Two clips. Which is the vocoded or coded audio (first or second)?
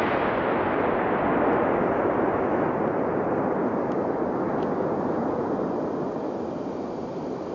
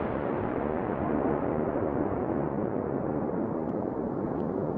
second